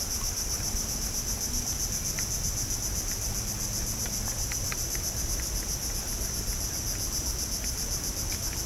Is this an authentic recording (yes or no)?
yes